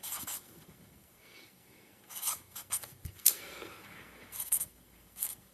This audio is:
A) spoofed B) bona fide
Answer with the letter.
A